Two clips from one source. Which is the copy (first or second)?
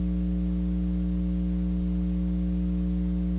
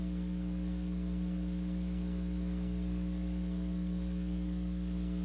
second